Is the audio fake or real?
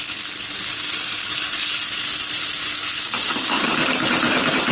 real